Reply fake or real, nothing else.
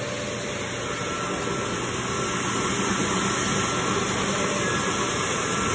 real